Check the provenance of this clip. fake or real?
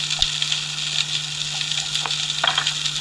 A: real